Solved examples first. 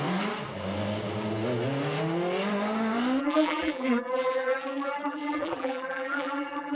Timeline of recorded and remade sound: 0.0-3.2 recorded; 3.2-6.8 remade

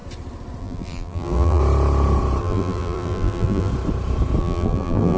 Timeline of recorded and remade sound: 0.0-0.6 recorded; 0.6-1.6 remade; 1.6-2.4 recorded; 2.4-3.7 remade; 3.7-4.4 recorded; 4.4-5.2 remade